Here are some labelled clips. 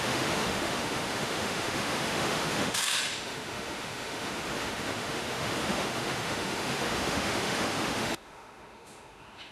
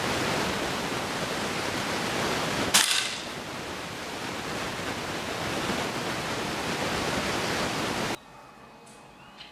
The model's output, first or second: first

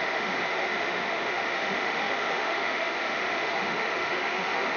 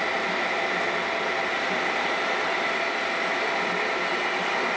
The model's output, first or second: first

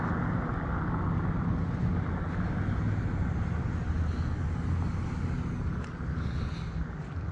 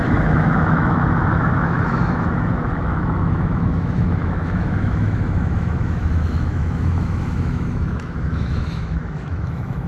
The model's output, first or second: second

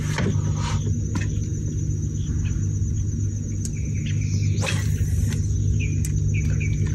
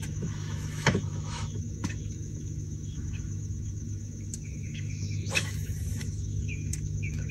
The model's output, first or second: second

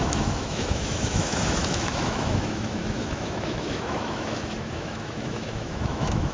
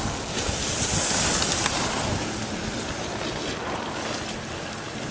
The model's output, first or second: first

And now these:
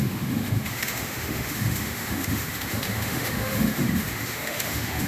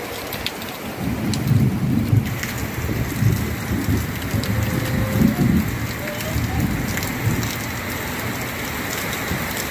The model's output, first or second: first